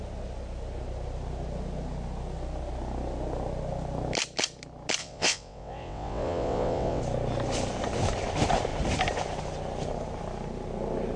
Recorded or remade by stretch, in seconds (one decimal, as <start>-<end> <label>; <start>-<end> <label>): 0.0-5.0 recorded; 5.0-7.0 remade; 7.0-11.2 recorded